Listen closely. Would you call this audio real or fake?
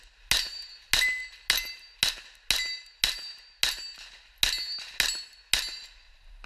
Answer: real